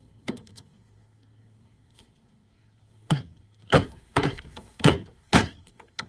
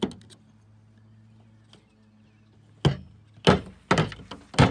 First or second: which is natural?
second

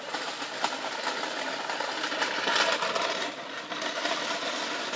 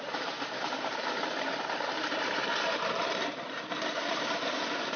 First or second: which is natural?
first